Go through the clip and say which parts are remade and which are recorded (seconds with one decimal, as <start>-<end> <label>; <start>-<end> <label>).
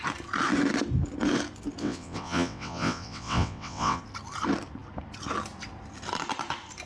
0.0-1.8 recorded; 1.8-4.0 remade; 4.0-6.9 recorded